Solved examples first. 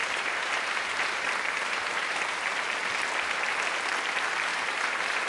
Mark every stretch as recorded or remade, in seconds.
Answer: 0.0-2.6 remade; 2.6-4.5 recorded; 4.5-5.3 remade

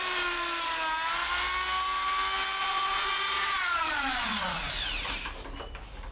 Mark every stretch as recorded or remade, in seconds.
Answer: 0.0-2.6 recorded; 2.6-4.7 remade; 4.7-6.1 recorded

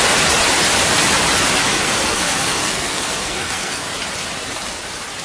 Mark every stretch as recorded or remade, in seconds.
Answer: 0.0-1.6 recorded; 1.6-3.9 remade; 3.9-5.2 recorded

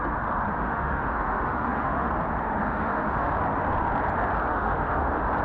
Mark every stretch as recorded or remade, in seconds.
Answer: 0.0-0.6 recorded; 0.6-2.1 remade; 2.1-2.6 recorded; 2.6-3.3 remade; 3.3-4.5 recorded; 4.5-5.0 remade; 5.0-5.4 recorded

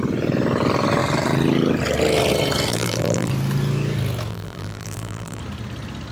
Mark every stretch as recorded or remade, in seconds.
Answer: 0.0-2.7 recorded; 2.7-3.3 remade; 3.3-4.3 recorded; 4.3-5.4 remade; 5.4-6.1 recorded